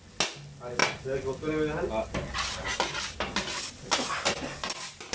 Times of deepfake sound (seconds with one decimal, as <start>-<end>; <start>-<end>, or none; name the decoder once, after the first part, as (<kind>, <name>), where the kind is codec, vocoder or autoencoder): none